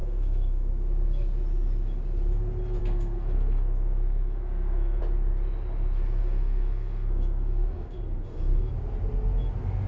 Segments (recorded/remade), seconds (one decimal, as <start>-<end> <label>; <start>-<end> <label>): 0.0-0.7 remade; 0.7-2.8 recorded; 2.8-5.0 remade; 5.0-6.2 recorded; 6.2-8.7 remade; 8.7-9.9 recorded